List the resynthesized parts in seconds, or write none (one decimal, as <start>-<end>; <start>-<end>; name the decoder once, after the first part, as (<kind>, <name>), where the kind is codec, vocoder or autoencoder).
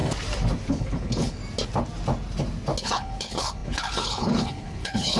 0.7-1.4 (codec, HILCodec); 2.8-5.2